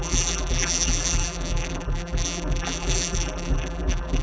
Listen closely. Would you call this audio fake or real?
fake